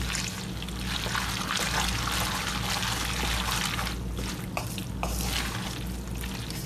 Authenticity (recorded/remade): recorded